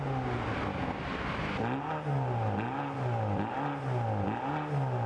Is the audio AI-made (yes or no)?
no